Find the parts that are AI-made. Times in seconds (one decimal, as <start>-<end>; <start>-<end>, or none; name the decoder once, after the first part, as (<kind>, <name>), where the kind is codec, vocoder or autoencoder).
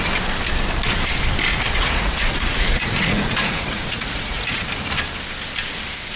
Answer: 1.5-4.6 (vocoder, Vocos)